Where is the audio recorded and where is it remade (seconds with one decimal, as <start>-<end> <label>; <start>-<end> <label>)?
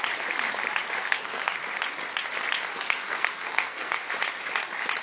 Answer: 0.0-1.0 recorded; 1.0-1.5 remade; 1.5-2.7 recorded; 2.7-4.0 remade; 4.0-5.0 recorded